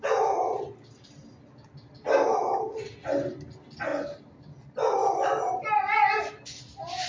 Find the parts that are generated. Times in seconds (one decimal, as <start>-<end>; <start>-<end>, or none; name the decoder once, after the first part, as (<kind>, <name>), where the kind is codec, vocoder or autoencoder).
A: none